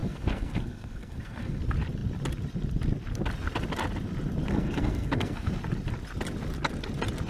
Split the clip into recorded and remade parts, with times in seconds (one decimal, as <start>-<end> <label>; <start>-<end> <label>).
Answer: 0.0-1.6 remade; 1.6-4.5 recorded; 4.5-5.6 remade; 5.6-7.3 recorded